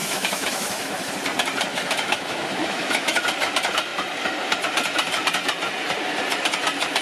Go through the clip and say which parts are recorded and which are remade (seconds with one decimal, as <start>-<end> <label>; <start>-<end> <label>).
0.0-1.1 remade; 1.1-1.7 recorded; 1.7-3.2 remade; 3.2-7.0 recorded